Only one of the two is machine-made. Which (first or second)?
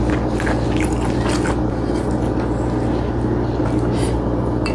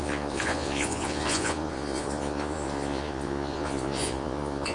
second